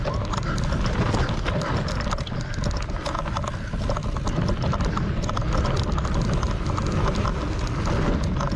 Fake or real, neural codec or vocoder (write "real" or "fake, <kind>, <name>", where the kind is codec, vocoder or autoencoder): real